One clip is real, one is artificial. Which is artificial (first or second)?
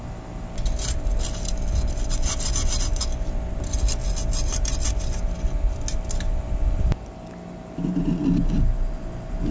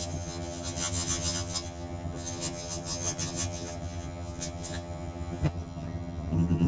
second